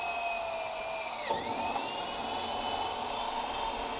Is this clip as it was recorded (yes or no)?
yes